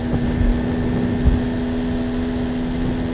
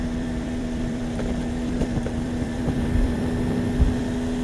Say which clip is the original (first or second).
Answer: first